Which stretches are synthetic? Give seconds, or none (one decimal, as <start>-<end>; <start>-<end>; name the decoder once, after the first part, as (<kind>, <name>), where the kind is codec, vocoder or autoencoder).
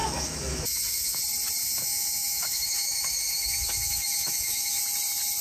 0.0-1.2 (autoencoder, DAC-VAE); 1.6-4.8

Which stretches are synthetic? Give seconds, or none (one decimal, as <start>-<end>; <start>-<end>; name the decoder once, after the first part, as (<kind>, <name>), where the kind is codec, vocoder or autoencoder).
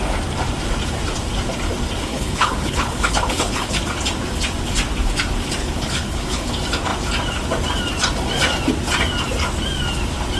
2.1-3.8 (codec, HILCodec); 5.6-6.5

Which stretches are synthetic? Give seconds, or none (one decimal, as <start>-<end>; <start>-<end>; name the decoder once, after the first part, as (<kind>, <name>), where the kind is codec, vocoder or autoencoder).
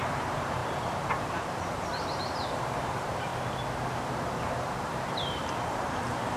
0.0-3.3 (vocoder, BigVGAN v2); 4.0-6.4